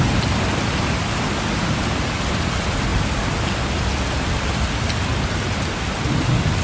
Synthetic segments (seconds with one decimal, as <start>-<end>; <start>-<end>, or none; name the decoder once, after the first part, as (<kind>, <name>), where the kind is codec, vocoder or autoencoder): none